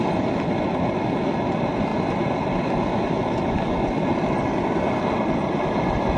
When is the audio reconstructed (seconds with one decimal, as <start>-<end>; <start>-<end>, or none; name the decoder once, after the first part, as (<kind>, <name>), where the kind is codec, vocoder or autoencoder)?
none